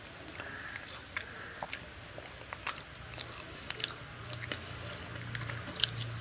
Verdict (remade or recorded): recorded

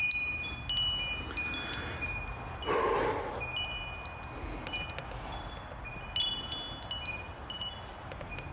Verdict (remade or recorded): recorded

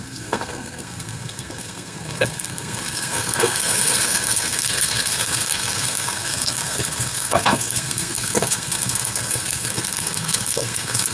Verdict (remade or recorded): remade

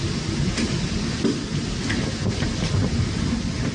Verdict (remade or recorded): recorded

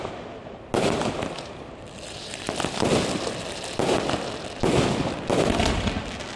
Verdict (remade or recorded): recorded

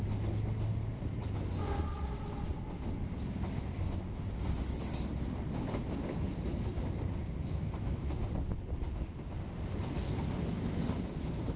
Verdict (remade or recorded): recorded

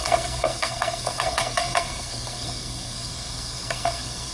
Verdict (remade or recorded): remade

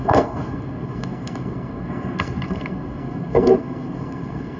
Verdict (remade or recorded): remade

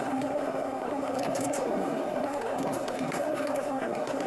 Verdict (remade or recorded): remade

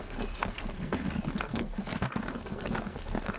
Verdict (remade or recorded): remade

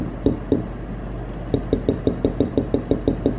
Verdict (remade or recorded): recorded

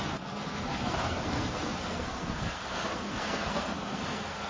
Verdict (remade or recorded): remade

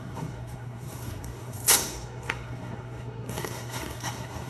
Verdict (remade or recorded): remade